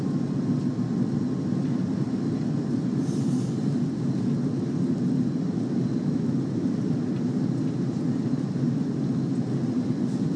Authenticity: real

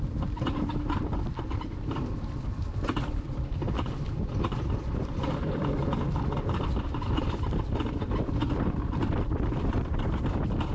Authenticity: fake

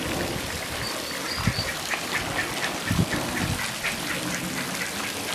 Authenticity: real